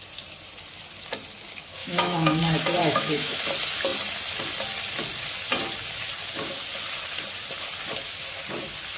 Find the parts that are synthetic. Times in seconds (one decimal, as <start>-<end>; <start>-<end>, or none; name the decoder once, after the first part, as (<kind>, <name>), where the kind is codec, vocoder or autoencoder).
1.8-2.4 (autoencoder, DAC-VAE); 2.8-3.4